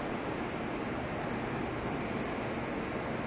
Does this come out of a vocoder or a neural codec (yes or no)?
no